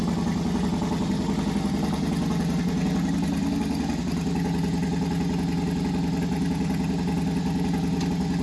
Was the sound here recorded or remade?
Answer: recorded